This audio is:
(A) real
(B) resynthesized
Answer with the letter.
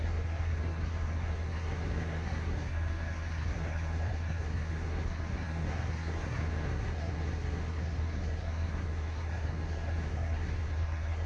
B